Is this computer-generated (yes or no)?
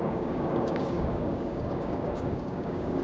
yes